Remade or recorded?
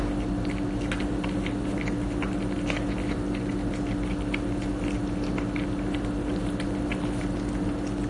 recorded